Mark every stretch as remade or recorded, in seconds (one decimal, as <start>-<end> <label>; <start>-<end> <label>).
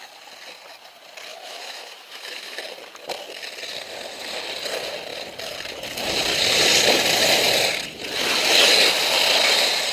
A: 0.0-1.3 recorded; 1.3-2.6 remade; 2.6-9.9 recorded